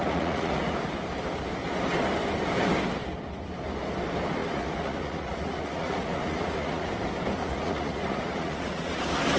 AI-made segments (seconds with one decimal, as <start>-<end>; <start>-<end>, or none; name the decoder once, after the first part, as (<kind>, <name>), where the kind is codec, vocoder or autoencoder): 0.0-0.6 (vocoder, Vocos); 4.4-6.9; 7.4-9.0